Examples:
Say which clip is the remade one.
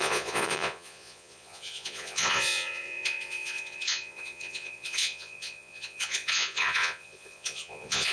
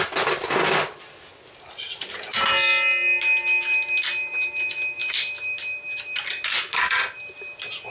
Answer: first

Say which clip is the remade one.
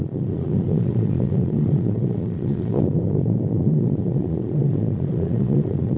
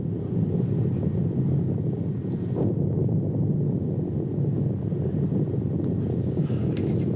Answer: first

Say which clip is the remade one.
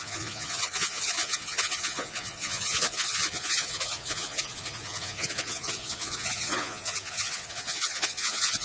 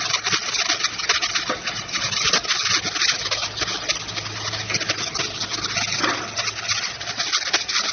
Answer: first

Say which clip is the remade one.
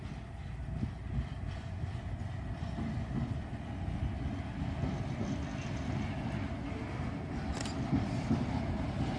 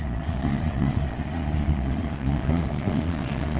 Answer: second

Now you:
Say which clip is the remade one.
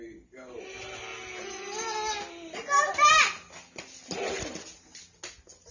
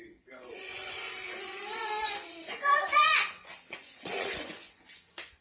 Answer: second